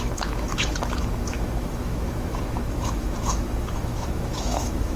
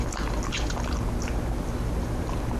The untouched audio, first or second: second